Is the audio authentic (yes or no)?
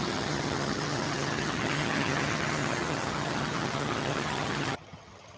no